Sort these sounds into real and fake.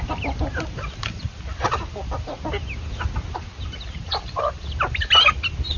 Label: real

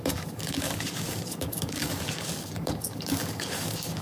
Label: fake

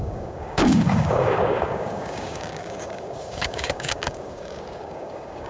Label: fake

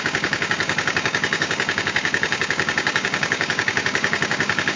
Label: fake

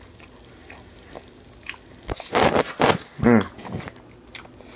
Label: real